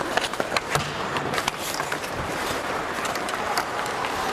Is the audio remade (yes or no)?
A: yes